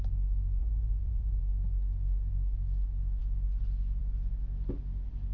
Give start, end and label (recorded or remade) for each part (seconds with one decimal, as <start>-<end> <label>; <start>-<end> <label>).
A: 0.0-0.6 recorded; 0.6-1.4 remade; 1.4-5.3 recorded